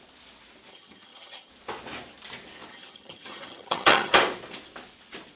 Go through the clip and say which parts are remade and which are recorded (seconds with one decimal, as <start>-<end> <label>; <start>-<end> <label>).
0.0-0.7 recorded; 0.7-1.5 remade; 1.5-2.7 recorded; 2.7-4.1 remade; 4.1-5.4 recorded